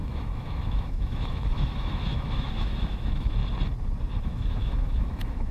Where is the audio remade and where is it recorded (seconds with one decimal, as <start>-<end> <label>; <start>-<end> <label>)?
0.0-3.4 remade; 3.4-4.2 recorded; 4.2-5.5 remade